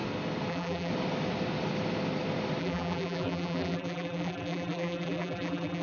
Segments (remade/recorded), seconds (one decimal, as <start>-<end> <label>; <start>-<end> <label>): 0.0-0.5 recorded; 0.5-0.9 remade; 0.9-2.6 recorded; 2.6-5.8 remade